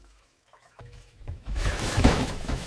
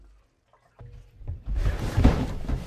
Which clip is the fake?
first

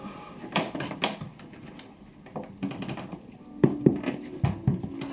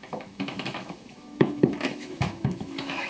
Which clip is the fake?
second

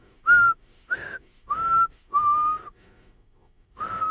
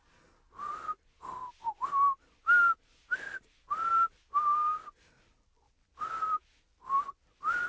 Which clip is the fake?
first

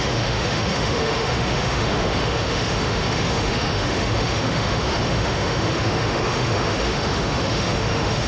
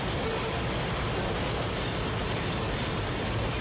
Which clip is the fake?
first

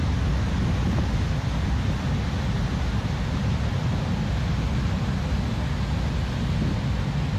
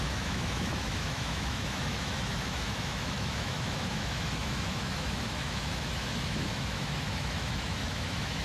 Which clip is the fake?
second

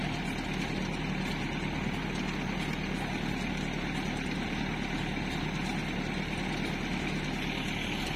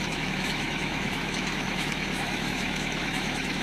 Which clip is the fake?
second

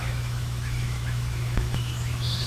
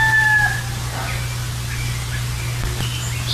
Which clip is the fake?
first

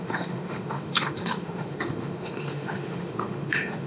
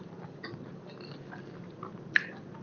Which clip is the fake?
first